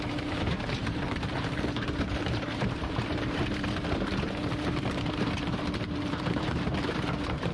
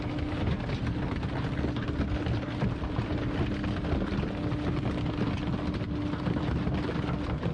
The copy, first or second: first